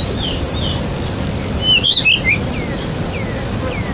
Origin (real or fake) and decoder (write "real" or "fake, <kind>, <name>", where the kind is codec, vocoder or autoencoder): real